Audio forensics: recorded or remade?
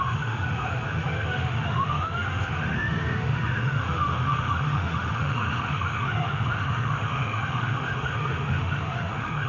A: remade